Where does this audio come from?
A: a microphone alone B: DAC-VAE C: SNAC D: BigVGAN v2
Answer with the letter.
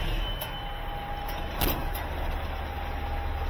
A